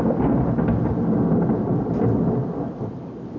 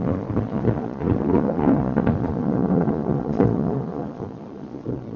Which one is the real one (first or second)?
first